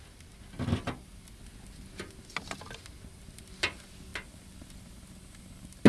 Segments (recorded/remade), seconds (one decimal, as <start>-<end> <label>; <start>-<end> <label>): 0.0-5.9 recorded